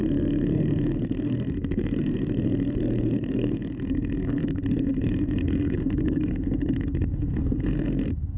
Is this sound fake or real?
fake